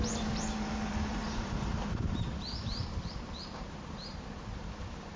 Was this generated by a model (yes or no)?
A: yes